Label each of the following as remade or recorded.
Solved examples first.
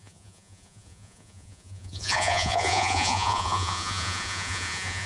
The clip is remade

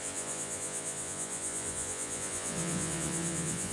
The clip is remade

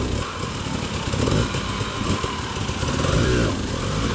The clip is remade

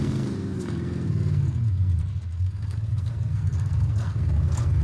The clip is remade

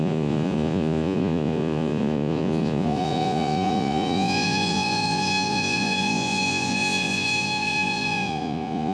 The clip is remade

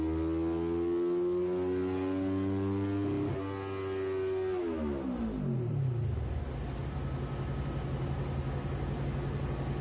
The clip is recorded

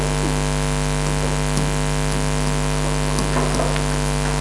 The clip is recorded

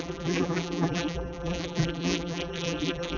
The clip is remade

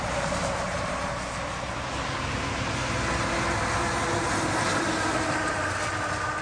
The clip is recorded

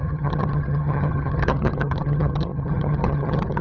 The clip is remade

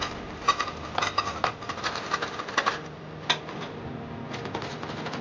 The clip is recorded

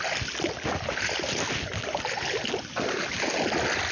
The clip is recorded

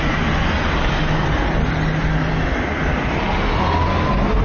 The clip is recorded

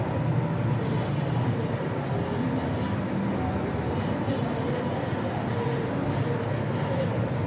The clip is recorded